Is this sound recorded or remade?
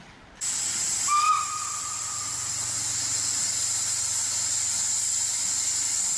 recorded